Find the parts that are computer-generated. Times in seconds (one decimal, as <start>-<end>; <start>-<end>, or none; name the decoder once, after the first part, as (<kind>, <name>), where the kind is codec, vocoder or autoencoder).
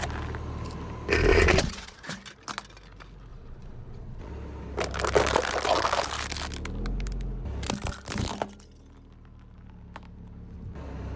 1.3-2.2 (vocoder, Vocos); 3.3-4.3